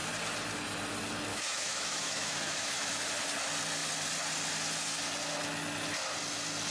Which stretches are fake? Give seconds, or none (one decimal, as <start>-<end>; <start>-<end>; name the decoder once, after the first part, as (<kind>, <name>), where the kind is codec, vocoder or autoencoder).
1.3-3.0 (autoencoder, DAC-VAE)